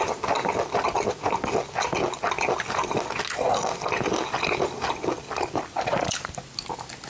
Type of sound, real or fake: real